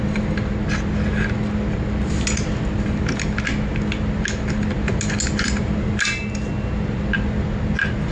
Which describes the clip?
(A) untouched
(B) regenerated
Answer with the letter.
A